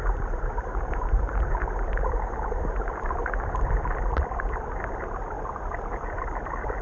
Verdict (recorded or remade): remade